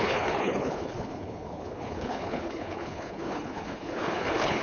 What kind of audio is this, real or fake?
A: fake